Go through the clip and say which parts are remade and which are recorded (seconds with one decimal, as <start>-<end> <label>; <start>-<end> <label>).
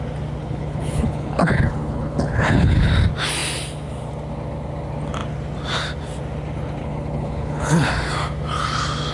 0.0-0.4 recorded; 0.4-2.9 remade; 2.9-6.8 recorded; 6.8-7.9 remade; 7.9-9.1 recorded